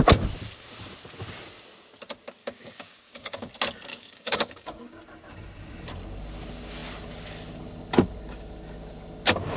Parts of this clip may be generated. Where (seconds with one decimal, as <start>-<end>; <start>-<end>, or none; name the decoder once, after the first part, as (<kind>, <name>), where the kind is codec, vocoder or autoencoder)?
2.4-3.5 (codec, DAC); 3.9-5.0

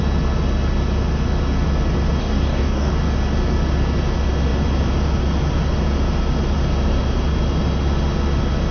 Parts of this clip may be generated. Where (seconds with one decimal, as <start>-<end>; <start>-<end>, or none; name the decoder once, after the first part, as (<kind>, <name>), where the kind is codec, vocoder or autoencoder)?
2.2-2.9 (codec, DAC)